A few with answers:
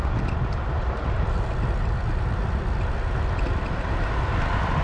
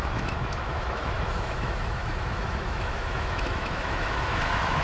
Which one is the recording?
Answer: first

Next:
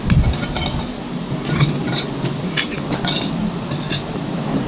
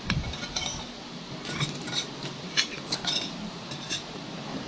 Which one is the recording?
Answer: first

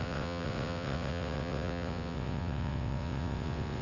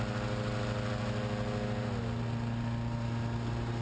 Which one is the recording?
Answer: second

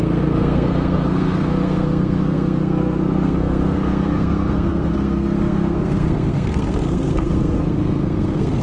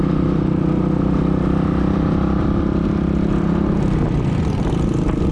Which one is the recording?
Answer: second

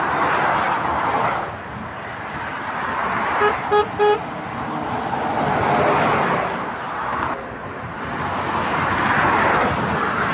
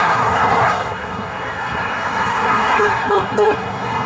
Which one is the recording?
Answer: first